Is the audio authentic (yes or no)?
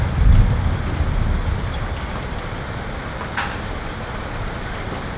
yes